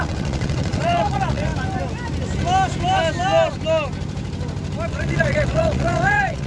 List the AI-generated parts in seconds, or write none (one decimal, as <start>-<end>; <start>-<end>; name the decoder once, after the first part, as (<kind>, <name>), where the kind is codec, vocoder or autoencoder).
0.0-1.5 (vocoder, WaveNeXt); 4.9-6.5